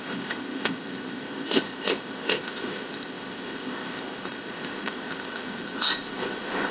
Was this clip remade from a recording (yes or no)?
yes